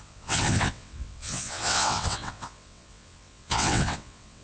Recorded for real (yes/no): no